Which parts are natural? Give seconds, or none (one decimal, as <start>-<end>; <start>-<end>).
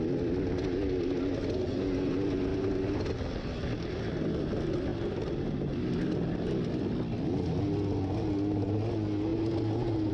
0.0-10.1